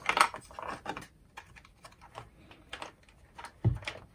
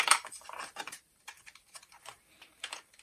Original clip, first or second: first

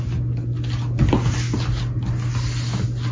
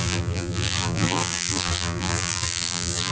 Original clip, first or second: first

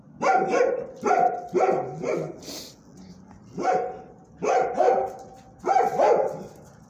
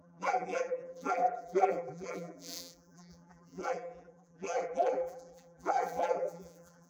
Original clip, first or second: first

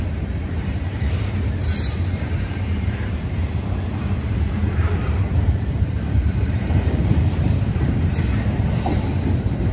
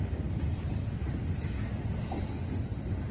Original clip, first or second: second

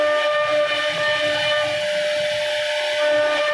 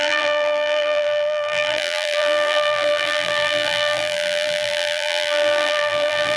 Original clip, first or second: first